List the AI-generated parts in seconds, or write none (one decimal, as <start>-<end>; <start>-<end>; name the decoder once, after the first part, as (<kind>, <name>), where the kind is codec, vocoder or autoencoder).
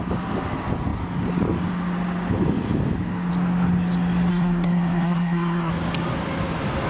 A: 4.3-5.7 (codec, SNAC)